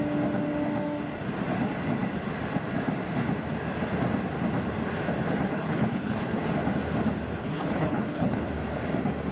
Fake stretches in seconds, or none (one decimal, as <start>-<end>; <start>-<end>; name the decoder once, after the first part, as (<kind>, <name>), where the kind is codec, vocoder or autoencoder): 5.5-6.5 (codec, HILCodec); 7.4-8.5